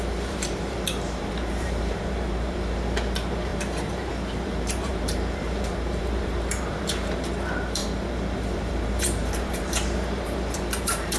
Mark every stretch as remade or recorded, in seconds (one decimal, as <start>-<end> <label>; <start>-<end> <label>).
0.0-11.2 remade